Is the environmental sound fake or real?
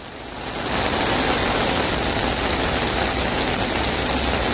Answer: real